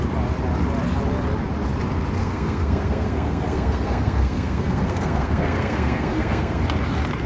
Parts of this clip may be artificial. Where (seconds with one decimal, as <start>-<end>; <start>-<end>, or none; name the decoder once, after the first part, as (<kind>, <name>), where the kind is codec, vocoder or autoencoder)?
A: 2.2-6.6 (codec, SNAC)